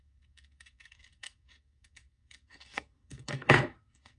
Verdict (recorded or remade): remade